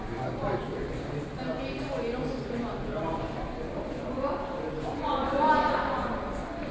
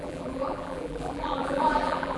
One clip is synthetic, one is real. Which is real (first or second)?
first